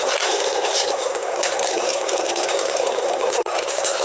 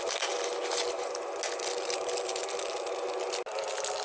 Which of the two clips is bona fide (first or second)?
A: second